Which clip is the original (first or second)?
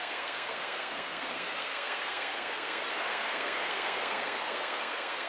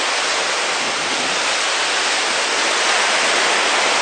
second